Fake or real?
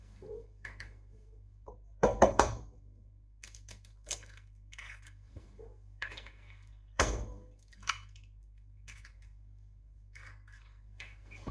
fake